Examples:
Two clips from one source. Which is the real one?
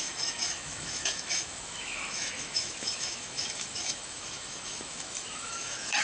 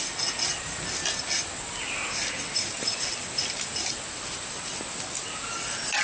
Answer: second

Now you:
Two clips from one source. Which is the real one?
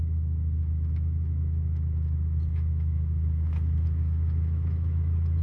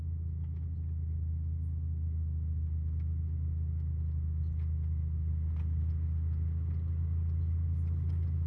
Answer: second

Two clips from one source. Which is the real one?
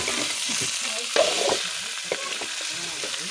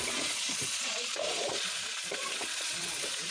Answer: first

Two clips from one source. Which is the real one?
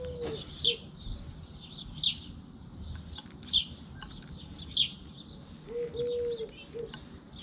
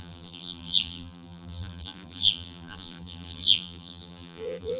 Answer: first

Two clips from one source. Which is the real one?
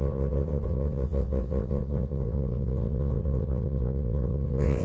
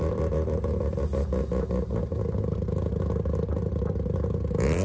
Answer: second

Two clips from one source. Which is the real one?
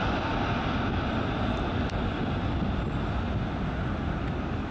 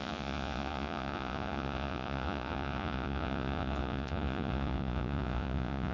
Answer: first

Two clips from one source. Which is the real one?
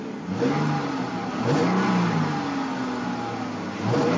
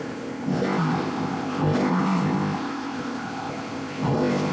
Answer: first